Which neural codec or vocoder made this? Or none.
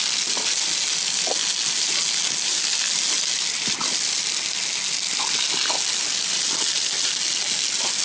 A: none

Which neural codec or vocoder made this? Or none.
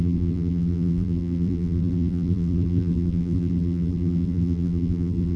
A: vocoder, BigVGAN v2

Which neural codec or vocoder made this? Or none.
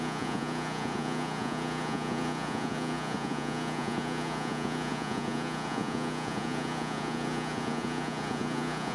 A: vocoder, Vocos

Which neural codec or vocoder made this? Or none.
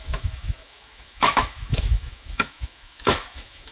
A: autoencoder, DAC-VAE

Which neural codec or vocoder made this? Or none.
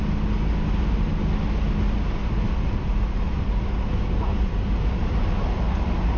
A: none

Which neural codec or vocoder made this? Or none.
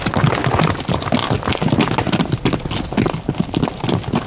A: none